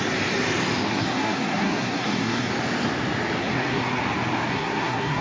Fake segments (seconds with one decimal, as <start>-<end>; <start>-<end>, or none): 0.9-2.5; 3.4-4.0; 4.5-5.2